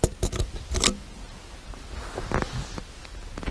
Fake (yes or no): no